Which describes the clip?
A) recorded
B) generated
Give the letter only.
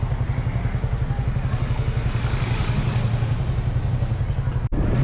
A